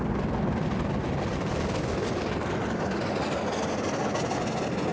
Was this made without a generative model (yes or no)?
yes